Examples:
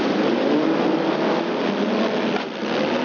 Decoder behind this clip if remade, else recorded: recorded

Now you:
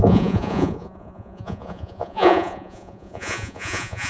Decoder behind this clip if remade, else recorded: remade, vocoder, Vocos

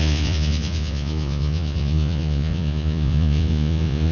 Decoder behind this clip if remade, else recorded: remade, vocoder, Vocos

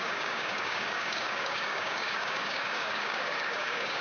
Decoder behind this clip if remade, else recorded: remade, codec, DAC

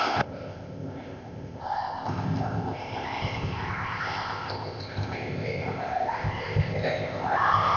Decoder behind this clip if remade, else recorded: remade, codec, ZipCodec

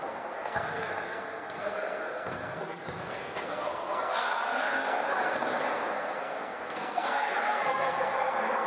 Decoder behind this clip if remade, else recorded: remade, codec, SNAC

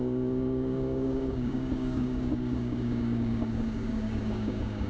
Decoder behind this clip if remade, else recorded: remade, codec, DAC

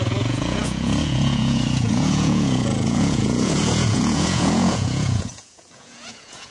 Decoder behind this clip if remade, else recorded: remade, vocoder, Vocos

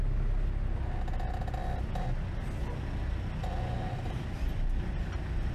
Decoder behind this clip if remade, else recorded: recorded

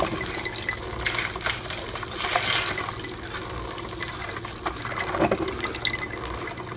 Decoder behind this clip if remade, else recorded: recorded